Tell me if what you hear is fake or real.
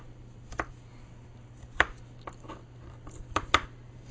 fake